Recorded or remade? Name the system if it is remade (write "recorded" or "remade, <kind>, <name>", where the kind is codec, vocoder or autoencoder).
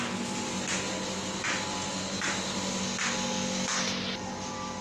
recorded